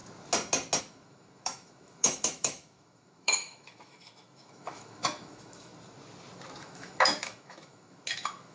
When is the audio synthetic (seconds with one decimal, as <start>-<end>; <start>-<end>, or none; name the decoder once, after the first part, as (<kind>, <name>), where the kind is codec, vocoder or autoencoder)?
0.8-5.7 (autoencoder, DAC-VAE); 6.6-8.5